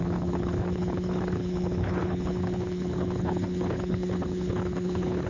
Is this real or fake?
fake